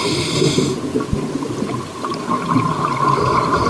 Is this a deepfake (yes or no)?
no